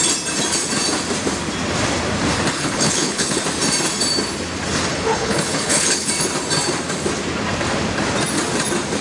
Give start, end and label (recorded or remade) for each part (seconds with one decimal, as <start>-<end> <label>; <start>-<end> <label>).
0.0-2.5 recorded; 2.5-3.4 remade; 3.4-4.9 recorded; 4.9-6.1 remade; 6.1-9.0 recorded